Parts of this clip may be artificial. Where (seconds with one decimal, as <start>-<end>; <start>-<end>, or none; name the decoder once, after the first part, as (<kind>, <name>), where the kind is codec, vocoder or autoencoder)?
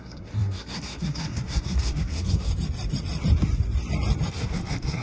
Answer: 0.0-2.5 (codec, SNAC); 4.3-5.0